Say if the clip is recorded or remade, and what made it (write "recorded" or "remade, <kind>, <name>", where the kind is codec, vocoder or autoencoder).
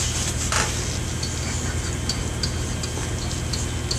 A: recorded